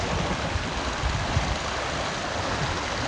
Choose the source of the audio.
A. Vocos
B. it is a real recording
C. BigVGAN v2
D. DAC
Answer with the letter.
B